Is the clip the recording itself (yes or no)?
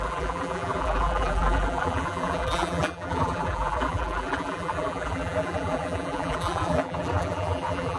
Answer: no